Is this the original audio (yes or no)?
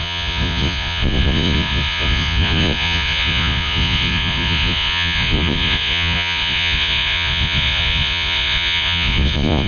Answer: no